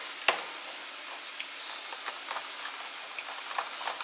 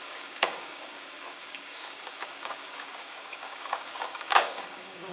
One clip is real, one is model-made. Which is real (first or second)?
first